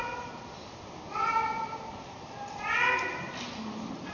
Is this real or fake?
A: real